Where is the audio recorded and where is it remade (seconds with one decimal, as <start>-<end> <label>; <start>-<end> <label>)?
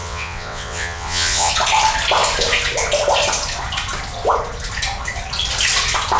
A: 0.0-1.5 remade; 1.5-6.2 recorded